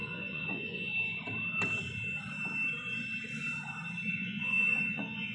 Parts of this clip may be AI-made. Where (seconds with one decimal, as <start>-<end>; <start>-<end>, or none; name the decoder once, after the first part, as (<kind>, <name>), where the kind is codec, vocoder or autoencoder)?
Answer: 0.0-0.9 (vocoder, Vocos); 4.1-5.3